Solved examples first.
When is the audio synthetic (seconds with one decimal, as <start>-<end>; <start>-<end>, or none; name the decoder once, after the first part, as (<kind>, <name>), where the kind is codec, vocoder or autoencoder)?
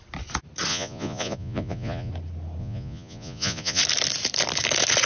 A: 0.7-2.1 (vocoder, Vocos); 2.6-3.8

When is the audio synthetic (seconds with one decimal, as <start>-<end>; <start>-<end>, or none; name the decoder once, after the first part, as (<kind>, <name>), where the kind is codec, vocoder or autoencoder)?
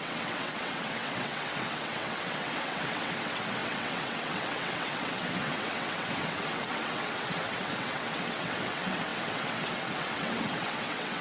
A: 0.0-11.2 (vocoder, WaveNeXt)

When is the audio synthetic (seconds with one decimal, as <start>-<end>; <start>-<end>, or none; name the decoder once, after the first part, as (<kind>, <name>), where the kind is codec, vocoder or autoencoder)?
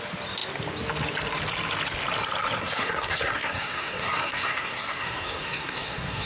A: 2.6-6.3 (codec, SNAC)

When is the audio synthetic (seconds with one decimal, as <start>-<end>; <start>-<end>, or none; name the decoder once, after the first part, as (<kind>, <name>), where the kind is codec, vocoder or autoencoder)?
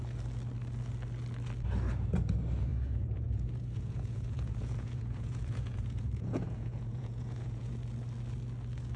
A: 2.7-7.7 (vocoder, Vocos)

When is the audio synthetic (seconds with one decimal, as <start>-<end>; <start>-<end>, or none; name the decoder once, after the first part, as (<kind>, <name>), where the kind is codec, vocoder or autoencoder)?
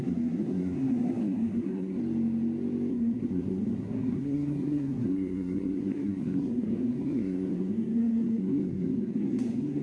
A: 0.0-2.0 (codec, SNAC); 2.9-9.8